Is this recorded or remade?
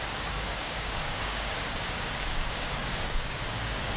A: remade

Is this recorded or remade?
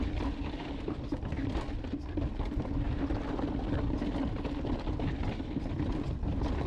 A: recorded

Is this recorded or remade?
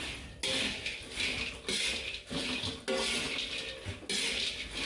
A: recorded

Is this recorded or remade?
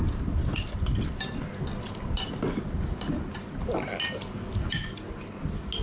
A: recorded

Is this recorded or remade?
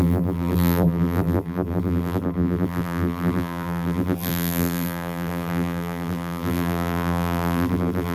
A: remade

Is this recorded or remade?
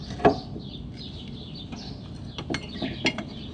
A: recorded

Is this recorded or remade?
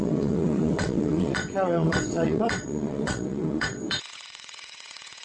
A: remade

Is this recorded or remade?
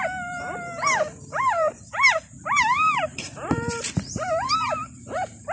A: remade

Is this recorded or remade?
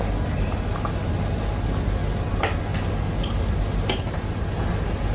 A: recorded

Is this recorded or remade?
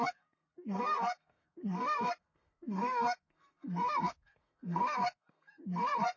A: remade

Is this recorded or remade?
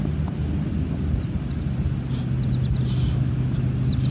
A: recorded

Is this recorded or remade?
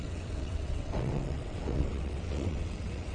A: remade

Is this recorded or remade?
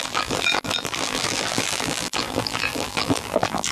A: remade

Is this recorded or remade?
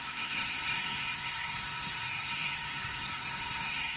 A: remade